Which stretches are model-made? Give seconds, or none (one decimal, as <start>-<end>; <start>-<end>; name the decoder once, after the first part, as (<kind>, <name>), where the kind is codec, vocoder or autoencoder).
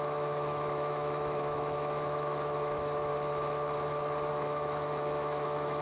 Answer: 0.0-3.1 (autoencoder, DAC-VAE); 4.3-5.8